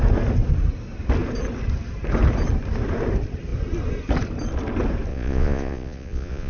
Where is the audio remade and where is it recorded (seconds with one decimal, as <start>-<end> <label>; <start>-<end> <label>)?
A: 0.0-5.1 recorded; 5.1-6.5 remade